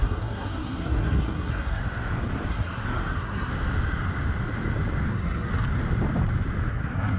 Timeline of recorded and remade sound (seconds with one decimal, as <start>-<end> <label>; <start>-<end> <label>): 0.0-1.8 remade; 1.8-2.5 recorded; 2.5-3.5 remade; 3.5-5.1 recorded; 5.1-5.5 remade; 5.5-6.7 recorded; 6.7-7.2 remade